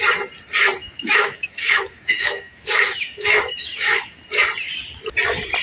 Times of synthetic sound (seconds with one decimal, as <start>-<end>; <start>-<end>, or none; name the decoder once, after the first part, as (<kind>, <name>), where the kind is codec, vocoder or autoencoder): 0.8-4.2 (autoencoder, DAC-VAE)

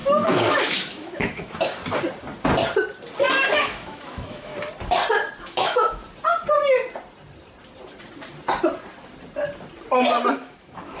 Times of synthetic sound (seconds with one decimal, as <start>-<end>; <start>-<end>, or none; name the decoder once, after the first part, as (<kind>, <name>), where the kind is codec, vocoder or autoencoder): 0.0-1.8 (autoencoder, DAC-VAE); 3.4-4.5; 5.4-6.0; 10.3-11.0

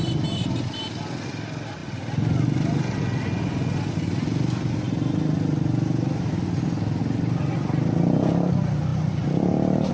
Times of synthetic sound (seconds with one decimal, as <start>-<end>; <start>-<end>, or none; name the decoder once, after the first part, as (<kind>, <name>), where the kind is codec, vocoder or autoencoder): none

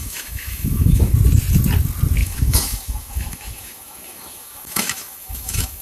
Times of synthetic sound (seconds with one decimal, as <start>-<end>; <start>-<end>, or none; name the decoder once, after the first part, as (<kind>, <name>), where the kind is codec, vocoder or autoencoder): 0.0-1.1 (autoencoder, DAC-VAE); 2.2-5.8

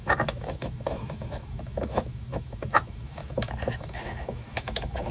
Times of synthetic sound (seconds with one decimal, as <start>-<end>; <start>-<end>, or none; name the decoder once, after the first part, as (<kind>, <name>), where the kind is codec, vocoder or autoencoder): 0.0-5.1 (autoencoder, DAC-VAE)

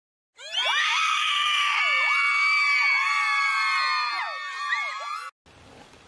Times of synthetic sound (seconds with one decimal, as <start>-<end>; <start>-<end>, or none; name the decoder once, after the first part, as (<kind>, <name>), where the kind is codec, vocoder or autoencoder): 0.8-1.8 (autoencoder, DAC-VAE)

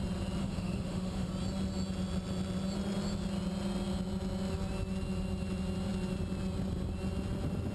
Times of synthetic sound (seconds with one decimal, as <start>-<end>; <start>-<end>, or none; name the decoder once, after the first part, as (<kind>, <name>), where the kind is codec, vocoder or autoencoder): 0.4-1.3 (autoencoder, DAC-VAE)

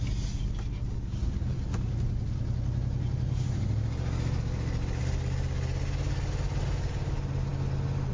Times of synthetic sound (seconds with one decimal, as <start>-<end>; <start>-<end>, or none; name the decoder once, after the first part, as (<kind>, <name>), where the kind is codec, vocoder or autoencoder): none